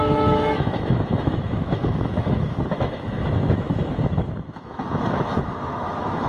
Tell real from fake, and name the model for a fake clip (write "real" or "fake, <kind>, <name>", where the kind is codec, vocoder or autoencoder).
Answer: fake, autoencoder, DAC-VAE